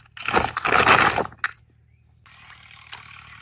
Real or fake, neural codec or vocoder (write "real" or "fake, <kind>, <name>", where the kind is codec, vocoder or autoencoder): real